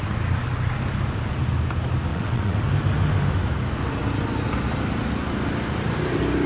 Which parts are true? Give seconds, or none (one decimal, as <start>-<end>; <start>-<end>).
0.0-2.1; 2.6-6.5